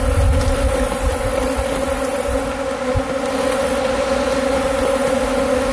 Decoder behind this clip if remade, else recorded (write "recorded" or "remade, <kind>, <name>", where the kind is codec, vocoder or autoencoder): recorded